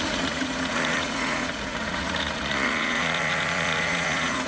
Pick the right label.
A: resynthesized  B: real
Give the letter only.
A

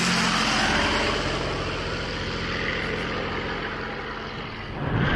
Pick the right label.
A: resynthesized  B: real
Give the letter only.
B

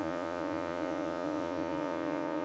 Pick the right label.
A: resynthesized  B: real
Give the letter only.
A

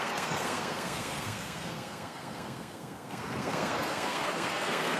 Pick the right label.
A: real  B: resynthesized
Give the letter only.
B